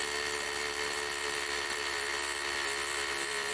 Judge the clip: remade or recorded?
remade